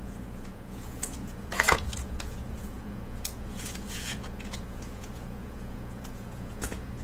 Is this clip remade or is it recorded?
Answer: remade